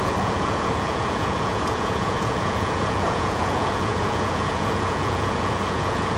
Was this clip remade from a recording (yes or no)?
yes